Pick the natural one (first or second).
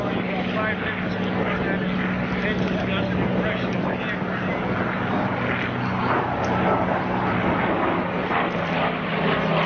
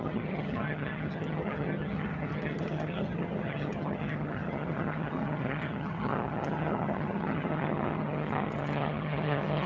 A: first